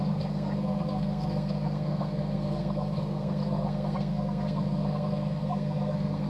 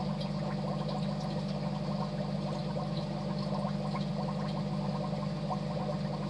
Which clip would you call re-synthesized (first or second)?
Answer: first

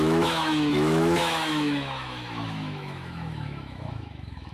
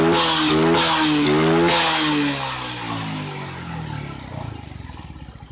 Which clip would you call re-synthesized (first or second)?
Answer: first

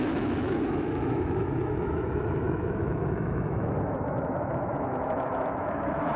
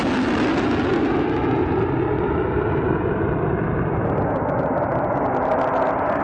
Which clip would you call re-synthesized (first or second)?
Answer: first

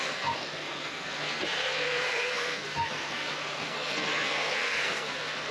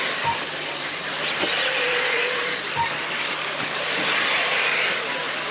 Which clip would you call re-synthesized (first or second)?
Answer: first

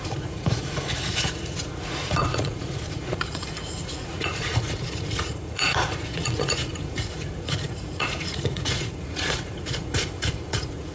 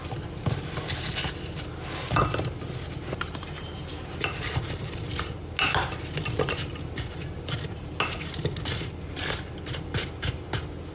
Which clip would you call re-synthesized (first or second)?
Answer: first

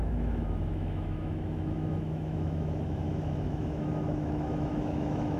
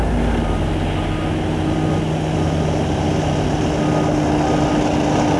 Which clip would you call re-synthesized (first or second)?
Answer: first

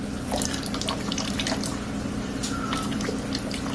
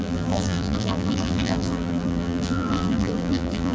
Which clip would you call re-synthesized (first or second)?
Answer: second